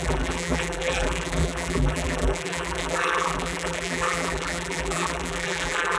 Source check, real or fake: fake